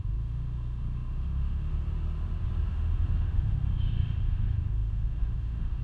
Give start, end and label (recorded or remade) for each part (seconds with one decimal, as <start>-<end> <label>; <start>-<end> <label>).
0.0-1.7 remade; 1.7-2.7 recorded; 2.7-5.8 remade